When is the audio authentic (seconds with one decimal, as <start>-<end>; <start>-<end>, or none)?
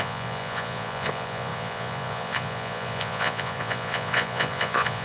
none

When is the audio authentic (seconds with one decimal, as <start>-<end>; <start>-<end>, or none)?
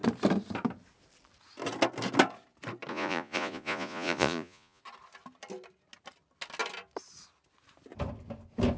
0.0-2.9; 4.8-8.8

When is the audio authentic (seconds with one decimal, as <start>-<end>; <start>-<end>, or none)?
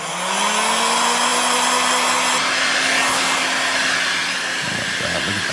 0.0-5.5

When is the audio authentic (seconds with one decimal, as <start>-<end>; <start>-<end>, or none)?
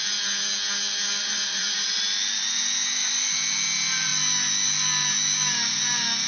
0.0-1.2; 2.0-6.3